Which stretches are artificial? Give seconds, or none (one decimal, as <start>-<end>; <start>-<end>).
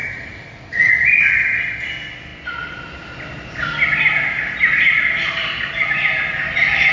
0.0-0.9